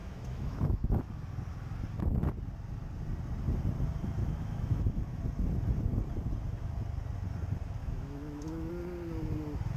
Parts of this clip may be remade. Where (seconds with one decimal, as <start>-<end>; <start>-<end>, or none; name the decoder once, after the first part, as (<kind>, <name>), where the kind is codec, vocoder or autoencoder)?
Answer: 0.0-1.1 (autoencoder, DAC-VAE); 4.2-5.2; 7.8-8.7